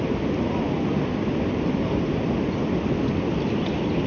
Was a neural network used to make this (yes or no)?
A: no